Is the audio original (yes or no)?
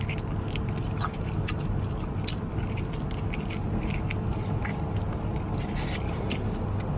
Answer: yes